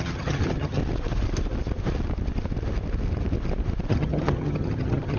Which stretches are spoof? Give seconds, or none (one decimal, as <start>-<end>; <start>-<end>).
0.0-0.8; 3.9-5.2